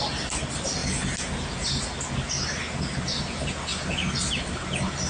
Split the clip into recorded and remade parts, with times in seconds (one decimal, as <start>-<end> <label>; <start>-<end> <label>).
0.0-5.1 recorded